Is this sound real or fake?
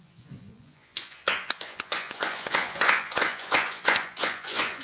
fake